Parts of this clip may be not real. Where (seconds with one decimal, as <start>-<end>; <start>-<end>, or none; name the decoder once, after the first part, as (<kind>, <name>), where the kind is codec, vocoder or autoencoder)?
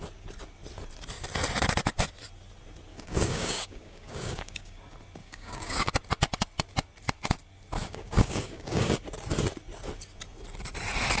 2.9-4.8 (codec, DAC); 5.2-5.9; 7.8-9.0